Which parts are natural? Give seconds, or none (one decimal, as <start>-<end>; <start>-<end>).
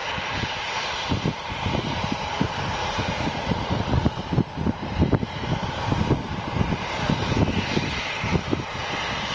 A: 0.0-2.8; 4.2-9.3